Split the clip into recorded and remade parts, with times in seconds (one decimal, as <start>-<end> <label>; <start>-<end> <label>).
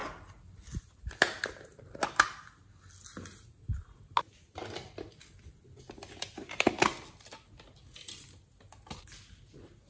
0.0-9.9 recorded